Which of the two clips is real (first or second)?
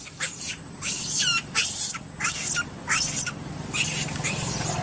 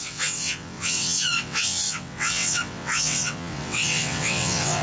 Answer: first